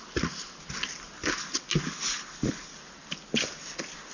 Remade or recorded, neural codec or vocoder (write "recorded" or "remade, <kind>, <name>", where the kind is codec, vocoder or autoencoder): recorded